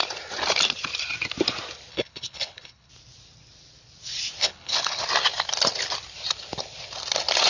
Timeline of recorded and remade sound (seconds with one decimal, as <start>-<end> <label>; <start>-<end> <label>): 0.0-1.9 recorded; 1.9-2.9 remade; 2.9-4.4 recorded; 4.4-5.0 remade; 5.0-7.5 recorded